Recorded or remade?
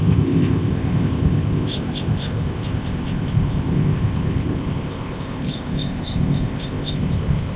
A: remade